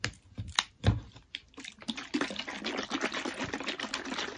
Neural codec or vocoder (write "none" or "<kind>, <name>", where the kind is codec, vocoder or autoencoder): none